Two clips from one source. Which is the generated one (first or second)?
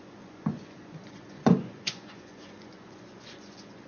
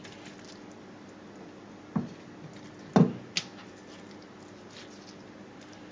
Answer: first